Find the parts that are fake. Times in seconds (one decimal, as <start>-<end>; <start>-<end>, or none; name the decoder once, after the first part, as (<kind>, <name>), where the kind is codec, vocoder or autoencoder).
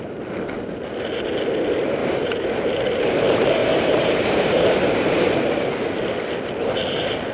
2.0-2.8 (vocoder, BigVGAN v2); 3.6-5.3